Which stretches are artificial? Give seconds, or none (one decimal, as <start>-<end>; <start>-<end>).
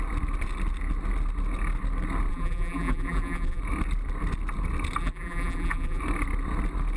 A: 2.3-3.6; 5.0-6.0